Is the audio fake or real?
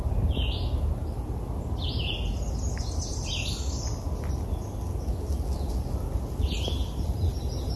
real